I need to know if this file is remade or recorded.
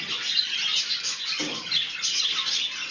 recorded